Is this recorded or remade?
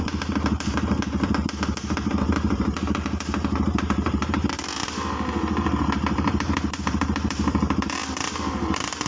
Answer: remade